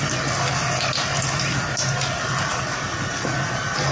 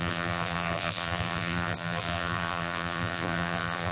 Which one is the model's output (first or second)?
second